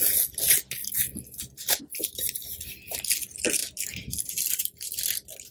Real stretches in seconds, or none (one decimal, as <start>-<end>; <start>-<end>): 0.0-5.5